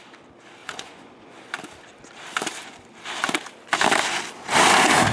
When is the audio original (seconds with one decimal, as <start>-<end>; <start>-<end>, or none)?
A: 0.0-0.6; 1.4-5.1